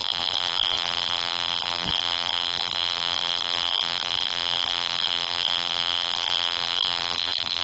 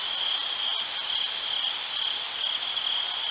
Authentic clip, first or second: second